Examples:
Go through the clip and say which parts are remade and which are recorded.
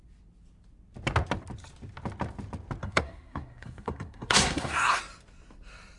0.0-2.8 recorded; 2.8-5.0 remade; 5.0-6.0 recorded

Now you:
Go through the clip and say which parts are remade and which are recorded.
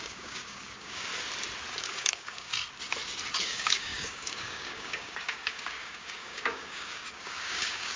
0.0-1.1 remade; 1.1-1.8 recorded; 1.8-2.5 remade; 2.5-3.4 recorded; 3.4-8.0 remade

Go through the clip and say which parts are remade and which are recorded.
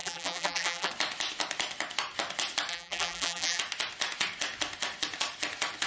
0.0-0.9 remade; 0.9-2.7 recorded; 2.7-3.6 remade; 3.6-5.9 recorded